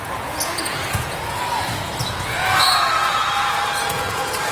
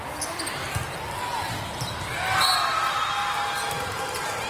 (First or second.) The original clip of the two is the second